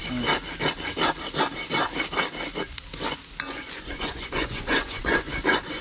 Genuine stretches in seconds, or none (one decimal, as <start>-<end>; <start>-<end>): 0.0-3.5